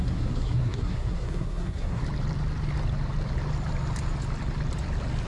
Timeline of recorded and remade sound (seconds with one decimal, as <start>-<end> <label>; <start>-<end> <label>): 0.0-2.0 remade; 2.0-5.3 recorded